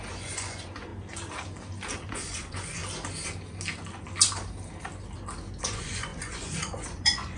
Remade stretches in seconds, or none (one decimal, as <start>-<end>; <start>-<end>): 0.0-0.9; 2.1-2.8; 5.6-7.4